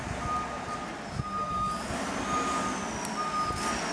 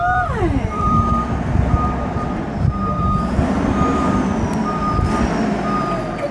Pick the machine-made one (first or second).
second